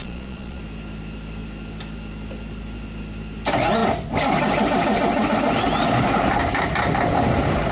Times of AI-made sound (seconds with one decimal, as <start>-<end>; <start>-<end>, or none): 0.0-0.6